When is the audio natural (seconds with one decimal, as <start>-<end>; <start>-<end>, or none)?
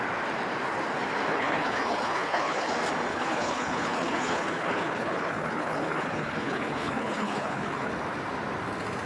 0.0-1.3; 2.7-3.1; 7.9-9.1